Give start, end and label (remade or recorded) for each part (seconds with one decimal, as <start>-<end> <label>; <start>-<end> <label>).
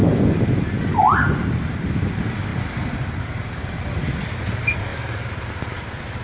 0.0-2.5 recorded; 2.5-4.0 remade; 4.0-4.9 recorded; 4.9-5.5 remade; 5.5-6.2 recorded